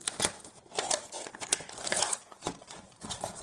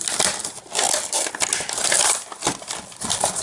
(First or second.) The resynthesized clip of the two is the first